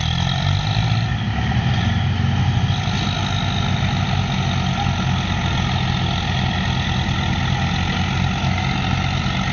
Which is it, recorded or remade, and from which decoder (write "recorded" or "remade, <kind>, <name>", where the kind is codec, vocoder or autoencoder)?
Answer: recorded